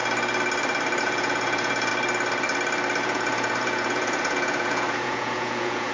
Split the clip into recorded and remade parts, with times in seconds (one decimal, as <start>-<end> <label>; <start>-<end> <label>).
0.0-1.0 recorded; 1.0-1.9 remade; 1.9-3.0 recorded; 3.0-5.9 remade